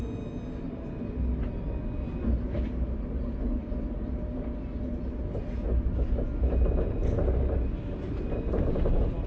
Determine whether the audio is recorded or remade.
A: recorded